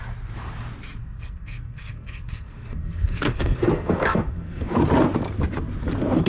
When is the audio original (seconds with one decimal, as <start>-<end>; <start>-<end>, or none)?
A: 0.0-1.0; 4.8-6.3